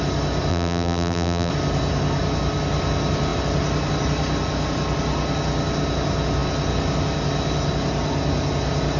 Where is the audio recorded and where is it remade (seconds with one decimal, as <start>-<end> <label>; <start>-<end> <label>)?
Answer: 0.0-0.5 recorded; 0.5-1.5 remade; 1.5-9.0 recorded